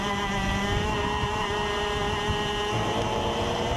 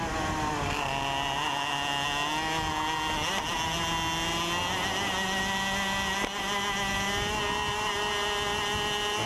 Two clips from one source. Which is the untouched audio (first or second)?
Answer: second